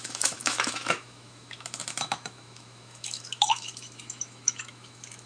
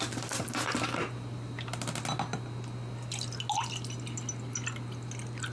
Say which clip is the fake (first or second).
first